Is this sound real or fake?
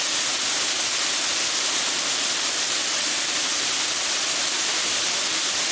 real